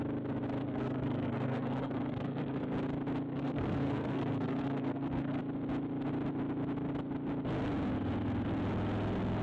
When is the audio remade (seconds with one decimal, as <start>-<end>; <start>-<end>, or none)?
0.6-2.6; 3.3-5.4